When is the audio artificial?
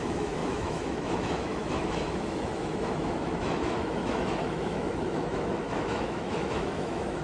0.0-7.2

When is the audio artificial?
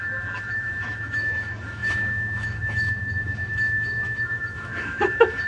0.0-5.5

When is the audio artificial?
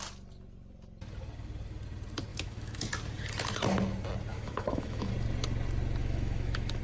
2.3-2.9; 4.3-5.1; 6.0-6.8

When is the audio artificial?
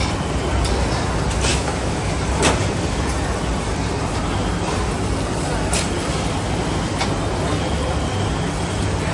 1.5-2.1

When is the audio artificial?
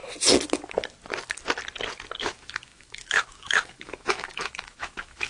2.2-5.3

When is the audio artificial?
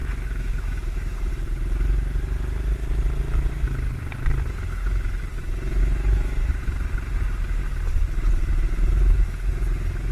0.0-1.3; 5.8-6.5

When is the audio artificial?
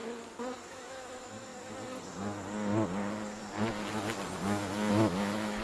0.7-1.5; 4.9-5.6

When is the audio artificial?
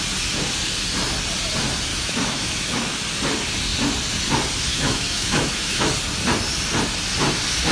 1.9-3.0; 4.7-5.8